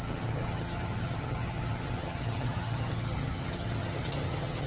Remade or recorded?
remade